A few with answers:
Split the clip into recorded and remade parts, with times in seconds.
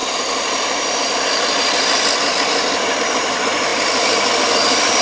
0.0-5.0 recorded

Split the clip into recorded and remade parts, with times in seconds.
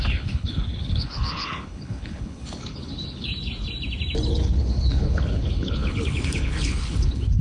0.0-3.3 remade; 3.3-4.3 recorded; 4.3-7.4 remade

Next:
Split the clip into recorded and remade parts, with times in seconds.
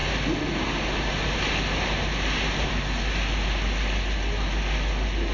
0.0-5.3 recorded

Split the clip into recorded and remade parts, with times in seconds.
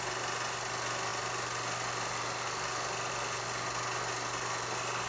0.0-5.1 recorded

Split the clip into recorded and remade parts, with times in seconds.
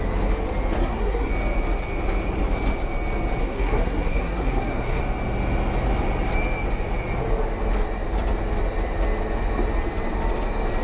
0.0-0.8 recorded; 0.8-1.3 remade; 1.3-3.4 recorded; 3.4-5.0 remade; 5.0-10.8 recorded